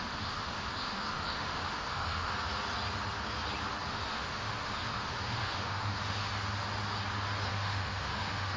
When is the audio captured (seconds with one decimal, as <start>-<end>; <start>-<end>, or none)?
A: 2.3-3.9; 6.3-7.5